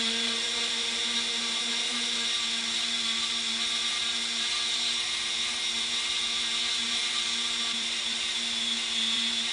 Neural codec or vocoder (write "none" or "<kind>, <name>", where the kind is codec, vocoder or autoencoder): vocoder, BigVGAN v2